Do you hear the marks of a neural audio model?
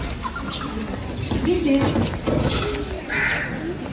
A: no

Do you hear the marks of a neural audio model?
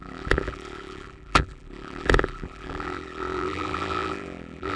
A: yes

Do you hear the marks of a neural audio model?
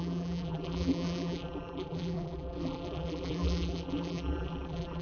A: yes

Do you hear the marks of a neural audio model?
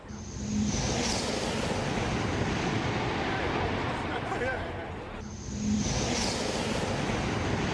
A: no